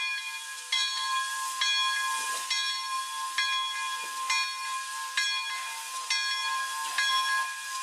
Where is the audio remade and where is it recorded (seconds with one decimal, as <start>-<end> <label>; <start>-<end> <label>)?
0.0-7.8 recorded